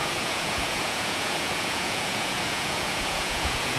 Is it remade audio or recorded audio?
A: remade